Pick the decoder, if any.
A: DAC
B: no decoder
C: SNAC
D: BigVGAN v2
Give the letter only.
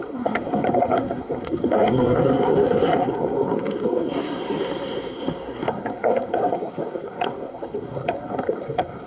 C